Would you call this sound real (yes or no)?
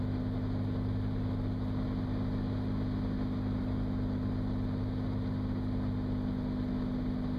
yes